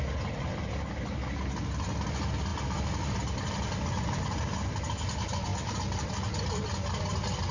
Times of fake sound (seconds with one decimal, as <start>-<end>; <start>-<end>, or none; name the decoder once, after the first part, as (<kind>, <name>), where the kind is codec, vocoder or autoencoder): none